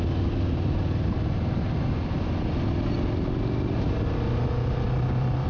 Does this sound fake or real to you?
real